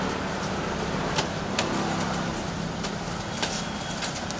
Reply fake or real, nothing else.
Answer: real